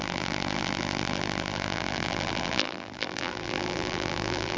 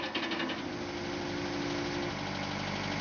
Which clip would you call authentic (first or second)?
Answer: second